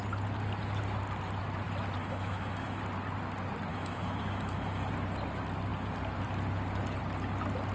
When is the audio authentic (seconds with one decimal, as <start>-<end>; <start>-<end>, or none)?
0.0-2.0; 2.8-3.7; 4.9-7.7